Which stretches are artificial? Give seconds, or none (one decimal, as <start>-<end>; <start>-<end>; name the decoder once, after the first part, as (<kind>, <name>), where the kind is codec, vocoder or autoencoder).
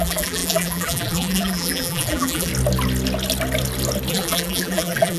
0.0-2.5 (vocoder, BigVGAN v2); 4.1-5.2